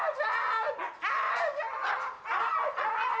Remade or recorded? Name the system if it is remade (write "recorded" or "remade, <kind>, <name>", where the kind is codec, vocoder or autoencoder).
recorded